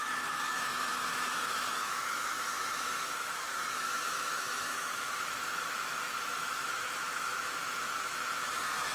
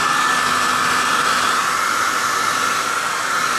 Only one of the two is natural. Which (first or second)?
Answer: second